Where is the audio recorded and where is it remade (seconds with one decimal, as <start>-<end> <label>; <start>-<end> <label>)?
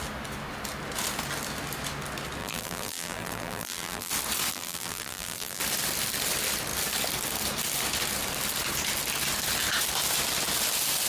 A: 0.0-2.4 recorded; 2.4-4.1 remade; 4.1-4.5 recorded; 4.5-5.6 remade; 5.6-11.1 recorded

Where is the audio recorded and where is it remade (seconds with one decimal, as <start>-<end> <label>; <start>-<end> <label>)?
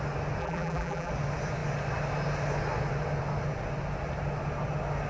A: 0.0-0.4 recorded; 0.4-1.1 remade; 1.1-5.1 recorded